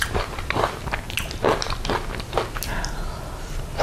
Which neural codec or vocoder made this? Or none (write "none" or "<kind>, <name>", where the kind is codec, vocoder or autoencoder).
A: none